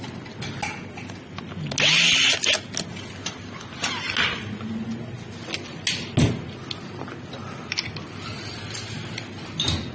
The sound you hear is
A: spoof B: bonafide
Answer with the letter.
B